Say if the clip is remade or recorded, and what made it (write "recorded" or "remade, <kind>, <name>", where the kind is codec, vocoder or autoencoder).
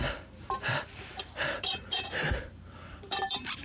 remade, vocoder, BigVGAN v2